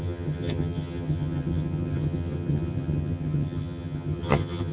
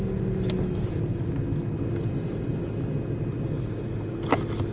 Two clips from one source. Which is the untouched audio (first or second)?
second